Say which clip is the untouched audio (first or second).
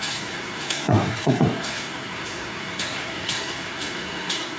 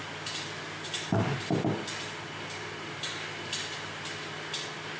second